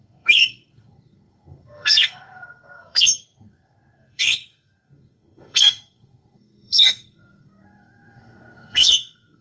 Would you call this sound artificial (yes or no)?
yes